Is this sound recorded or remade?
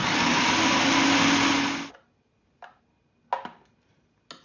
recorded